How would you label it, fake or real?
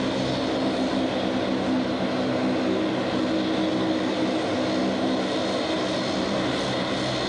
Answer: real